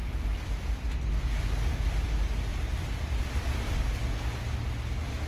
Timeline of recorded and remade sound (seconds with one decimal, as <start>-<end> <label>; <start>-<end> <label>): 0.0-2.1 remade; 2.1-2.5 recorded; 2.5-3.8 remade; 3.8-5.3 recorded